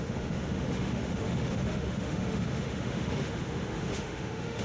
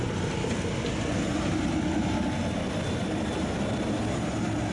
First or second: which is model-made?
first